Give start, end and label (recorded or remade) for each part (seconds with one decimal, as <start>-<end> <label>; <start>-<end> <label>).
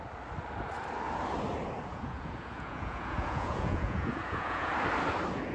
0.0-1.9 recorded; 1.9-4.7 remade; 4.7-5.5 recorded